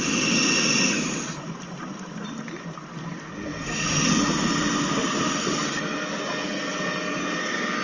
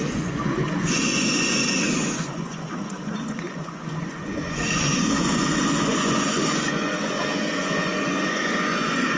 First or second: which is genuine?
first